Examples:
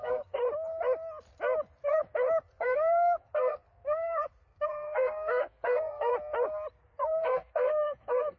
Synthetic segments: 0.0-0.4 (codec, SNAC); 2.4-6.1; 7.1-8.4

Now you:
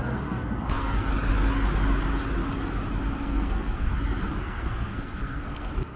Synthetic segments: 0.0-1.1 (codec, SNAC); 3.2-3.9; 4.4-6.0

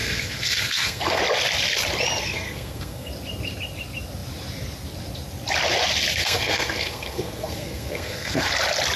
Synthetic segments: 0.0-1.2 (codec, SNAC); 2.2-3.1; 6.2-8.5